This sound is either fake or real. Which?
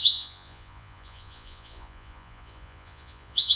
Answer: fake